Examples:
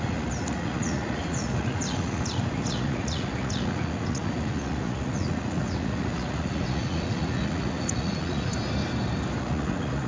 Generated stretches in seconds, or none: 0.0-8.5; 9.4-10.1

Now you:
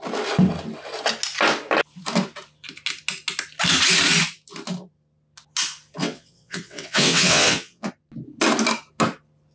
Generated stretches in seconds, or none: 6.0-7.9

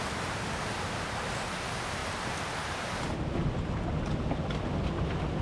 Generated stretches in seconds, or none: 0.0-2.0

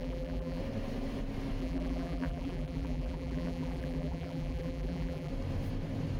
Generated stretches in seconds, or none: 0.0-0.6; 1.6-5.3

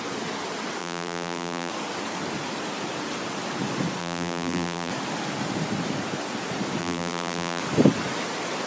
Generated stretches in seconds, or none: 0.8-1.7; 4.0-4.9; 6.8-7.6

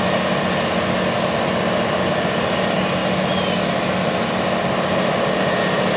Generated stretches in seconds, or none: none